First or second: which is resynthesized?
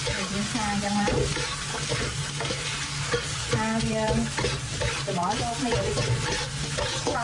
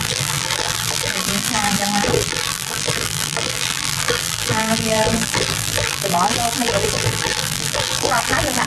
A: second